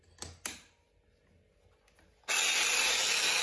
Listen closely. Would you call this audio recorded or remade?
recorded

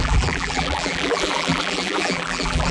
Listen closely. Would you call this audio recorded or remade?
remade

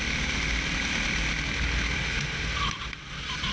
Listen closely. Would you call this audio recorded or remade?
recorded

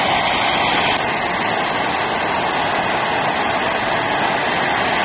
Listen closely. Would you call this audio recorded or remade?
recorded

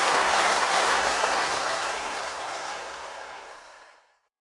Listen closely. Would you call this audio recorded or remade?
remade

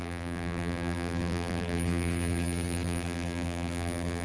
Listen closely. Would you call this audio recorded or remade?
remade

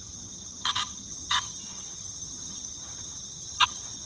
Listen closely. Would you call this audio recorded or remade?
remade